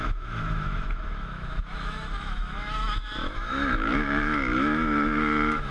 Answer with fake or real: fake